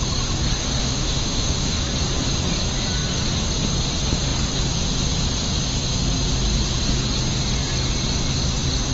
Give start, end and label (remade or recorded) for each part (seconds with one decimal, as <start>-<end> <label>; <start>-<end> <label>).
0.0-0.8 recorded; 0.8-1.8 remade; 1.8-8.9 recorded